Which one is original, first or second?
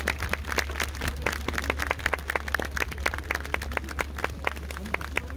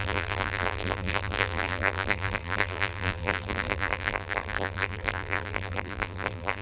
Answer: first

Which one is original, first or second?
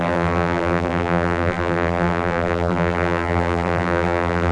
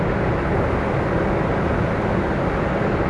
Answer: second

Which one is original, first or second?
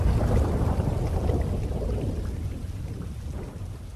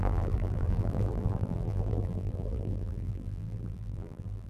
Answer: first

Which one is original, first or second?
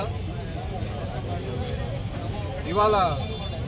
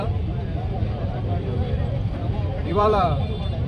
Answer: first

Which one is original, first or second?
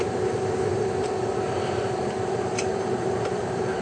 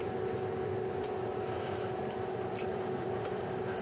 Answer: second